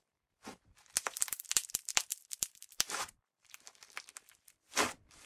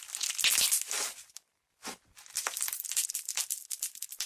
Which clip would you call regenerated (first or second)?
first